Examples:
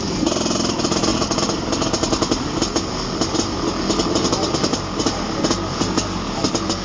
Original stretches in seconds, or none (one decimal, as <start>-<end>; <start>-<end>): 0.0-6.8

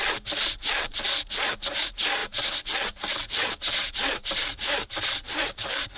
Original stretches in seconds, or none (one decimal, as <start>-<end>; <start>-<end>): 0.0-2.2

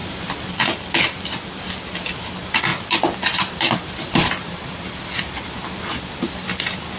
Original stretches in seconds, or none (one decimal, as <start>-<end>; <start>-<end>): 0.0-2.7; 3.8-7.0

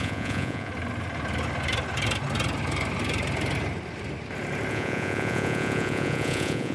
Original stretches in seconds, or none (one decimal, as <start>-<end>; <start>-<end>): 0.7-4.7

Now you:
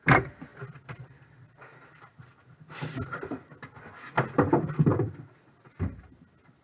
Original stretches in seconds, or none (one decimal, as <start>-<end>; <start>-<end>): 0.0-6.6